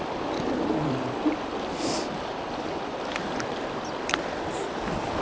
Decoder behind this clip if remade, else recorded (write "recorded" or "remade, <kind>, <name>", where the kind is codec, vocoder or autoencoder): remade, vocoder, BigVGAN v2